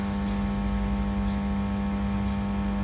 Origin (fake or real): real